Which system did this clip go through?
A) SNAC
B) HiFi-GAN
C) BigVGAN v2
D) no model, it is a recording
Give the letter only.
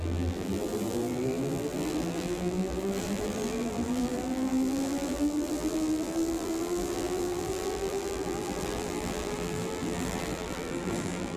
C